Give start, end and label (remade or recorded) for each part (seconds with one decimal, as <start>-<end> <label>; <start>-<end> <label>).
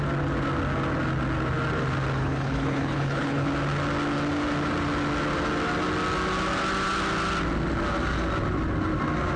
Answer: 0.0-2.2 recorded; 2.2-3.5 remade; 3.5-9.4 recorded